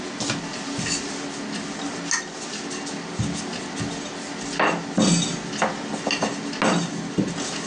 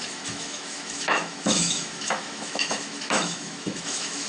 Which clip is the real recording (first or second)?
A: first